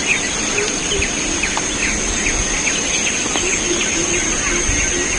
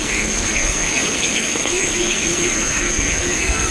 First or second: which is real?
first